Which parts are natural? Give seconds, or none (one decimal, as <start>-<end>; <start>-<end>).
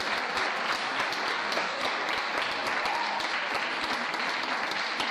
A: 0.0-1.3; 1.8-5.1